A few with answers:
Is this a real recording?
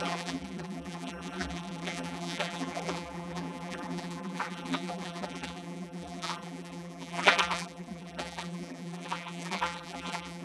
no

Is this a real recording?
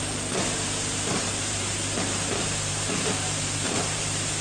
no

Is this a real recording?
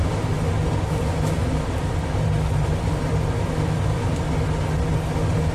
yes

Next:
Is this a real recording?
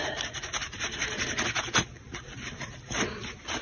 yes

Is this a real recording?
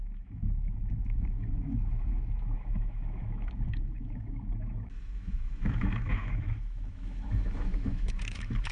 no